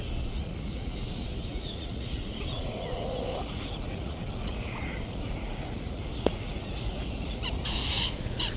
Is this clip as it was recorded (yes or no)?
no